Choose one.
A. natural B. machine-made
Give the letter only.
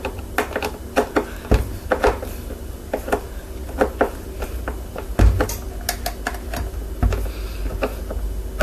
A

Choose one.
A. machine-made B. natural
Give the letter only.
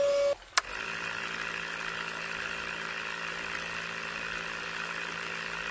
B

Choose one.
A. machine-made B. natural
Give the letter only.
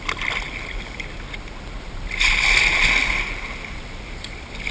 B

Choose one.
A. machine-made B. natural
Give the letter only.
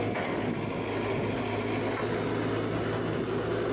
B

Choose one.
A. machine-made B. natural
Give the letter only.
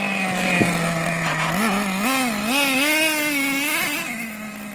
B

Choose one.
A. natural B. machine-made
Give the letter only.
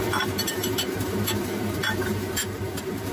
B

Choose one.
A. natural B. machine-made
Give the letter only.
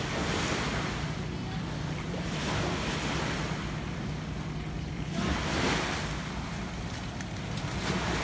A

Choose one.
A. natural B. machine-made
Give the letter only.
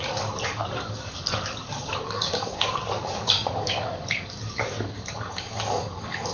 B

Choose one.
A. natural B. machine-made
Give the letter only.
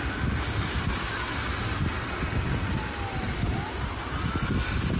A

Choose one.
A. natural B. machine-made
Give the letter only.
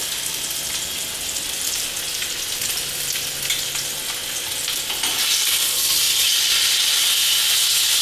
A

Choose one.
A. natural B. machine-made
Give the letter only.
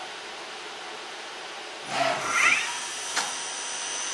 A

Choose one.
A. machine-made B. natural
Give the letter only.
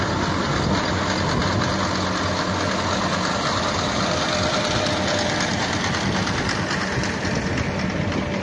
B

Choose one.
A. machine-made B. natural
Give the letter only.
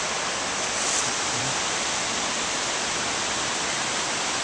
A